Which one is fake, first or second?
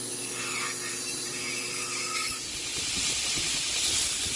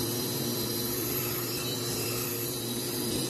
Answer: second